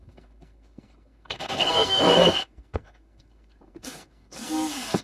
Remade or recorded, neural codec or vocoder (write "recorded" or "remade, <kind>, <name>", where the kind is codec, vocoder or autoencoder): remade, codec, SNAC